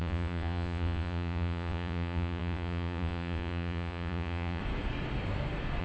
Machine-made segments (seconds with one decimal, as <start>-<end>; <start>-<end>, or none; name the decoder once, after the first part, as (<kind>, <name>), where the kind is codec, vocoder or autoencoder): 0.0-4.6 (vocoder, Vocos)